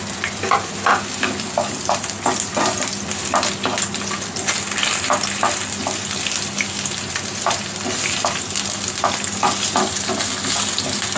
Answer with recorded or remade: recorded